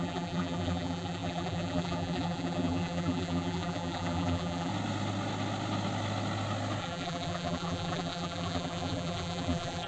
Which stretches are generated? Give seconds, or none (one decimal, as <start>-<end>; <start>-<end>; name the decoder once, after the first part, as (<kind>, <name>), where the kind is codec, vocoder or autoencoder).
0.0-4.7 (vocoder, BigVGAN v2); 6.8-9.9